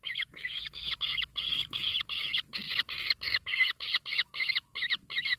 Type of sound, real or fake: fake